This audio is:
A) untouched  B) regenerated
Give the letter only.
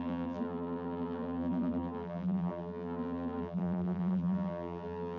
B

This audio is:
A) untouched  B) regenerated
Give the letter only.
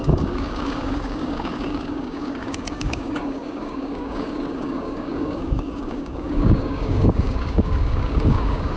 B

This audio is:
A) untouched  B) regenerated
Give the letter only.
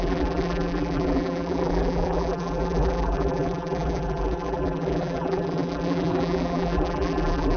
B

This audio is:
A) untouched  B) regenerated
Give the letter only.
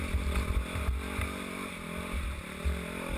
A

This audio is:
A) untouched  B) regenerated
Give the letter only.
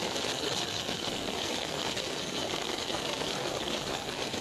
B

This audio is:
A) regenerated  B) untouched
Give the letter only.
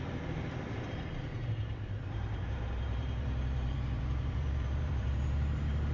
A